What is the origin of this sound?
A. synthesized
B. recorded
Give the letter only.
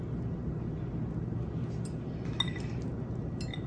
B